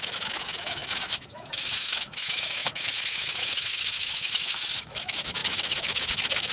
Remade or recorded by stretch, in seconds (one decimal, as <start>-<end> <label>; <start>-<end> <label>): 0.0-6.5 remade